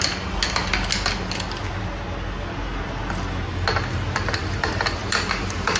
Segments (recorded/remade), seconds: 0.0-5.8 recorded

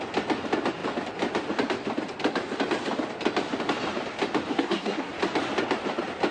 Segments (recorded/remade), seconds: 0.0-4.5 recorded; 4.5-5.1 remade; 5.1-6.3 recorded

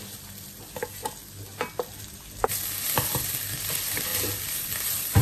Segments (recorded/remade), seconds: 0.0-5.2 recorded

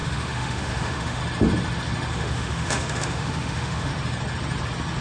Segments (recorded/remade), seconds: 0.0-1.2 remade; 1.2-2.1 recorded; 2.1-3.9 remade; 3.9-5.0 recorded

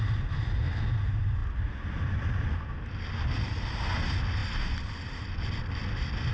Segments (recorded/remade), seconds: 0.0-6.3 recorded